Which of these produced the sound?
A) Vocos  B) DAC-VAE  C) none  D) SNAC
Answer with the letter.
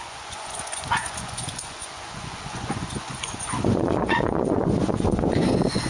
A